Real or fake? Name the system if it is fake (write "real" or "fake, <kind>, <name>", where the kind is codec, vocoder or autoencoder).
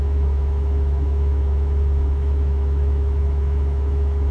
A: fake, autoencoder, DAC-VAE